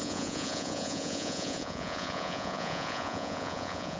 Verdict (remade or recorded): remade